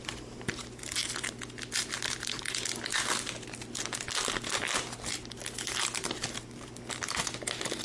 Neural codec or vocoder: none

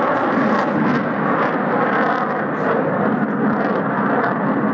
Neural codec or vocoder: none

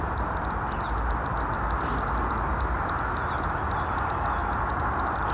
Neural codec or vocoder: none